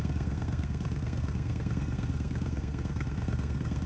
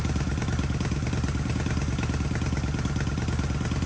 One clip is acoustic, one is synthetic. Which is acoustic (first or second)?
second